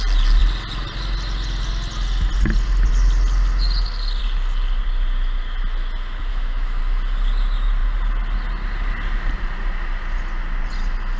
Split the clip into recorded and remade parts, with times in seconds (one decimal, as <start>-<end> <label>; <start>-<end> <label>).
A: 0.0-6.3 recorded; 6.3-6.8 remade; 6.8-11.2 recorded